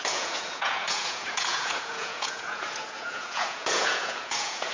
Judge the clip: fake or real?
fake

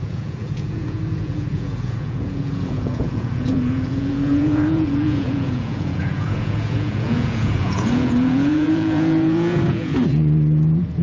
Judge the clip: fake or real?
fake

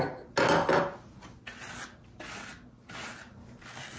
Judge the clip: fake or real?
real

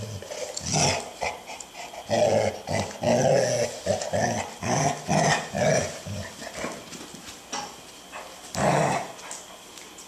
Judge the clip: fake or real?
real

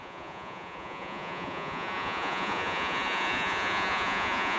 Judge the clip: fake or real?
fake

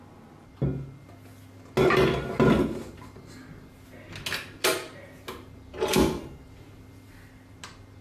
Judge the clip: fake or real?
real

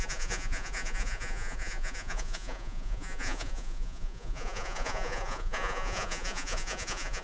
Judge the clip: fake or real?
fake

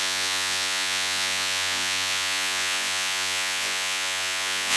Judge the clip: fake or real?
fake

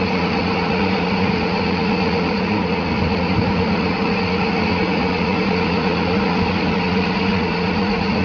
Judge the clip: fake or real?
fake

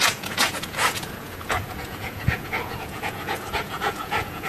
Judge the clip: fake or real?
fake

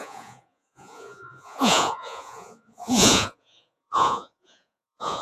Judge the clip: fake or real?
fake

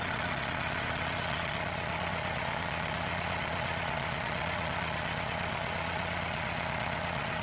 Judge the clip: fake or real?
fake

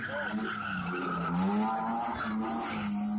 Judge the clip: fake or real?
real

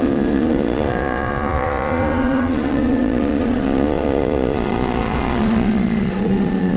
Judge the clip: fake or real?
fake